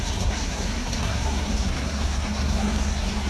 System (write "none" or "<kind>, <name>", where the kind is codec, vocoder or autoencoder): codec, SNAC